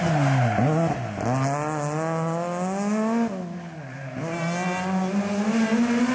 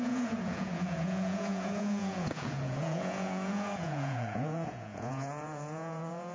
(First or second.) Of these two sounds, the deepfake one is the second